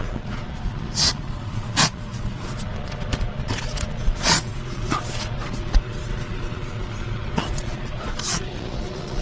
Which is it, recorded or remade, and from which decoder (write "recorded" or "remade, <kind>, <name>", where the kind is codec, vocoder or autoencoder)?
remade, vocoder, Vocos